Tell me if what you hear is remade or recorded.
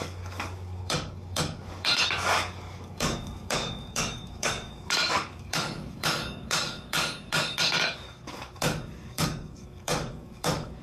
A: remade